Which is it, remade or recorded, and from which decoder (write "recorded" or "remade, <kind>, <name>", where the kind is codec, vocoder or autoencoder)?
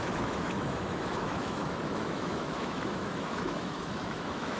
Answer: remade, autoencoder, DAC-VAE